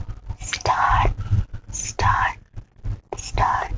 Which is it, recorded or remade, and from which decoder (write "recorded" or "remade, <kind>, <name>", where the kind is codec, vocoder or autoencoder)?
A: recorded